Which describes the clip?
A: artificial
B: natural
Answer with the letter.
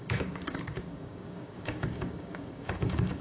A